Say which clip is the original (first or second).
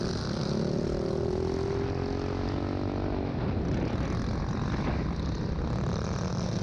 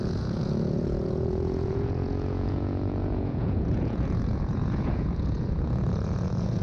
first